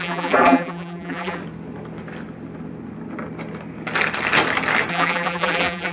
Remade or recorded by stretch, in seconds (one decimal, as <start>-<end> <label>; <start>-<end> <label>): 0.0-1.4 remade; 1.4-4.9 recorded; 4.9-5.9 remade

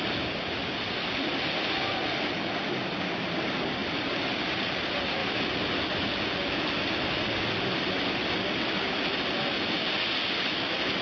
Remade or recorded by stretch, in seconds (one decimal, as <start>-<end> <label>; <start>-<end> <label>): 0.0-11.0 recorded

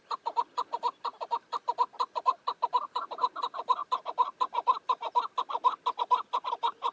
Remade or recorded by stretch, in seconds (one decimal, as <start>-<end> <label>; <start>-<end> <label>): 0.0-6.9 recorded

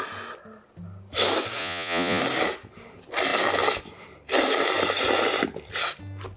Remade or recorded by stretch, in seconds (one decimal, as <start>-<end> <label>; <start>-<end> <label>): 0.0-1.6 recorded; 1.6-2.2 remade; 2.2-6.4 recorded

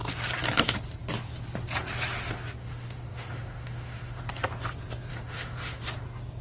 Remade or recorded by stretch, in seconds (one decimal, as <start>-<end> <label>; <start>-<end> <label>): 0.0-2.6 recorded; 2.6-4.2 remade; 4.2-5.1 recorded; 5.1-5.8 remade; 5.8-6.4 recorded

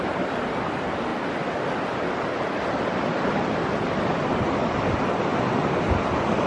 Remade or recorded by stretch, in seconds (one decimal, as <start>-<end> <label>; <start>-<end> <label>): 0.0-6.5 recorded

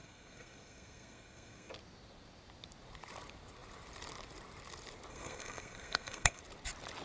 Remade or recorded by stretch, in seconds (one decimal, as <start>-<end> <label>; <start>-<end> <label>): 0.0-1.7 remade; 1.7-5.1 recorded; 5.1-6.4 remade; 6.4-7.0 recorded

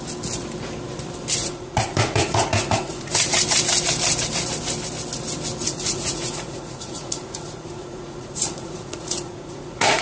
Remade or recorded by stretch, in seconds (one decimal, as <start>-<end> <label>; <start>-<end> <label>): 0.0-1.4 recorded; 1.4-3.1 remade; 3.1-5.6 recorded; 5.6-10.0 remade